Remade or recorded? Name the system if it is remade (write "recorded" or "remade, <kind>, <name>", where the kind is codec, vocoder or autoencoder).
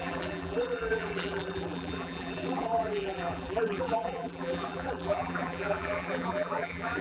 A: remade, vocoder, BigVGAN v2